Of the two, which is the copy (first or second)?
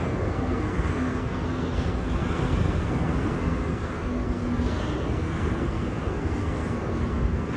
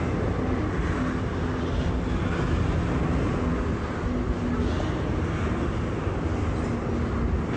first